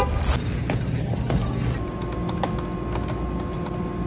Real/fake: real